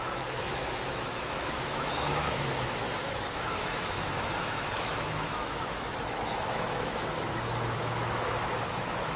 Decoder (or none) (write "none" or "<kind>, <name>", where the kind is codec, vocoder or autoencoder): autoencoder, DAC-VAE